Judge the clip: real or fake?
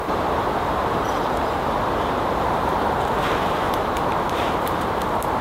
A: fake